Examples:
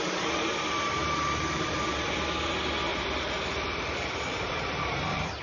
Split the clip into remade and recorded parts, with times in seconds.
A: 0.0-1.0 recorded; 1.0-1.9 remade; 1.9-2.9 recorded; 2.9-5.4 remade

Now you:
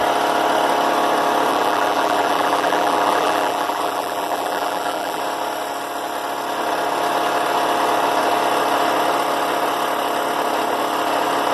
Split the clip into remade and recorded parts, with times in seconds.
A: 0.0-1.5 recorded; 1.5-5.2 remade; 5.2-11.5 recorded

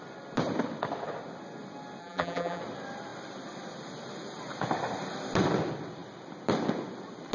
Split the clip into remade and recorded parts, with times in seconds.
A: 0.0-2.0 recorded; 2.0-2.6 remade; 2.6-7.3 recorded